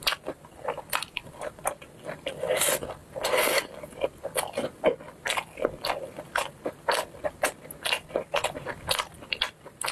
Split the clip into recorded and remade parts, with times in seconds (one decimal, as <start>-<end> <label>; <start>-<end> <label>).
0.0-9.9 recorded